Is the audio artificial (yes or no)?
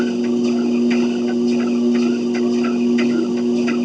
no